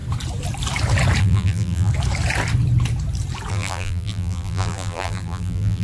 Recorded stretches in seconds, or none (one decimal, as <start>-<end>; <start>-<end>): 0.0-1.2; 1.9-3.5